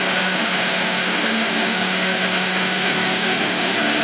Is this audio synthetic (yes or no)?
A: yes